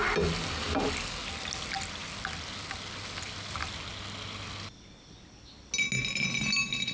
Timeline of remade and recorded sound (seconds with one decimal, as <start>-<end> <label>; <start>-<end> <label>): 0.0-6.9 recorded